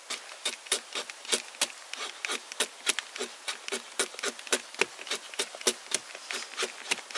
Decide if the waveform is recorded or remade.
recorded